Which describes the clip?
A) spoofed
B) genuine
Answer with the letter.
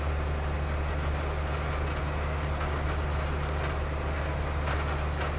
B